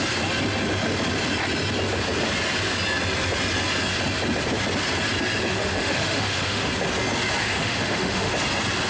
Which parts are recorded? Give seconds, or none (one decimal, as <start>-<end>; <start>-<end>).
0.0-5.5; 6.7-7.4; 8.3-8.9